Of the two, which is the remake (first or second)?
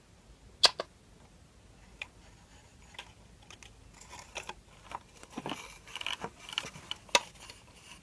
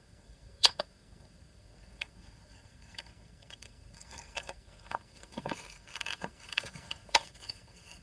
second